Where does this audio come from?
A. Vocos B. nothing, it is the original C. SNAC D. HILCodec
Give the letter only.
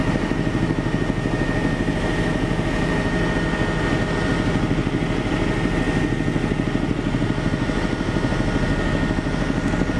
B